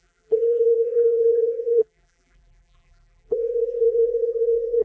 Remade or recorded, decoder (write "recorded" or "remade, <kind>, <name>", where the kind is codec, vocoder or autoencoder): remade, vocoder, BigVGAN v2